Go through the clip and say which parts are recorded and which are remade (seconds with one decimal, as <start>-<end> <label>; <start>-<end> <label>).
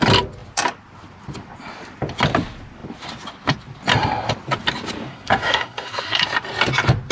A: 0.0-5.1 recorded; 5.1-6.2 remade; 6.2-7.1 recorded